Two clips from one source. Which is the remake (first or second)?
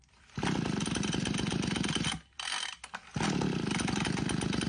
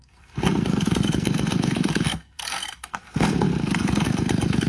second